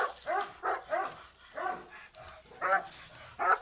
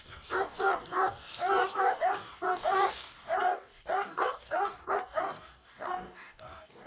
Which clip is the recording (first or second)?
first